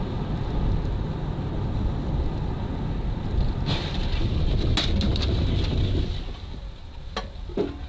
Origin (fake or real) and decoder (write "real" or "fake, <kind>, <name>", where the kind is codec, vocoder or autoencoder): real